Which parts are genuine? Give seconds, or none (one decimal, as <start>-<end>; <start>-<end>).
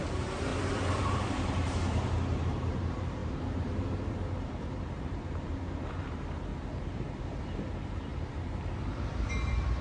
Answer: 6.5-7.3